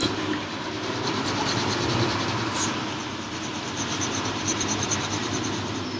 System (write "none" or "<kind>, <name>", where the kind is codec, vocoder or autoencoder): vocoder, BigVGAN v2